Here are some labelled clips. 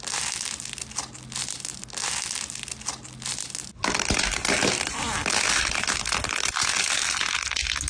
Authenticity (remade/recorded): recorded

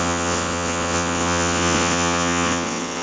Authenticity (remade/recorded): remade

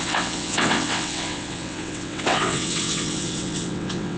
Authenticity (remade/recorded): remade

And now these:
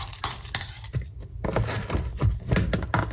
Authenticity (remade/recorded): recorded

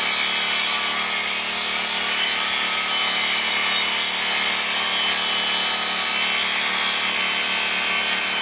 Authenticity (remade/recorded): recorded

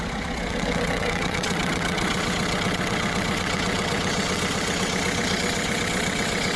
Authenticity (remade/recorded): remade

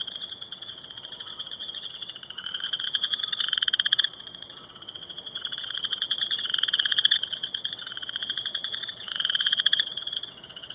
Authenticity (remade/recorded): remade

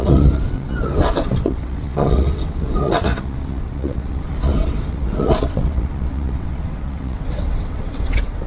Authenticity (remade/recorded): remade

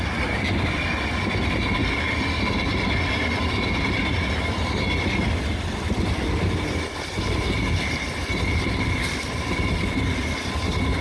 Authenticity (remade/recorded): recorded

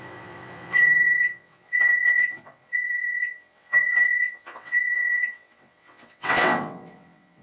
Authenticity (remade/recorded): remade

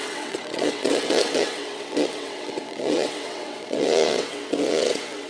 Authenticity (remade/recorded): remade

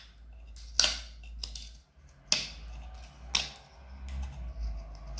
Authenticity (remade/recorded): recorded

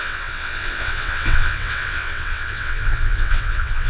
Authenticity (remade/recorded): remade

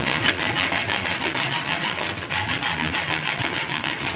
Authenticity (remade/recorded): remade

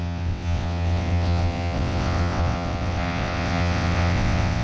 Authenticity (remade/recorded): remade